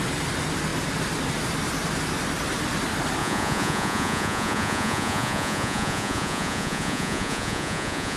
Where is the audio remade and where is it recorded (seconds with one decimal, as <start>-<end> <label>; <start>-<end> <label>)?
0.0-3.2 recorded; 3.2-8.2 remade